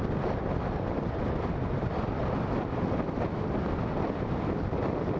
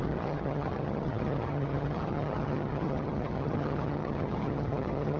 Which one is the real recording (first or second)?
first